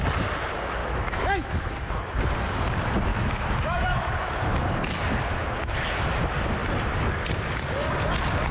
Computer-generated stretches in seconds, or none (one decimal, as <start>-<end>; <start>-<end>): 0.8-2.0; 3.1-4.3